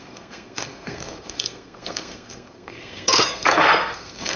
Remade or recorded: remade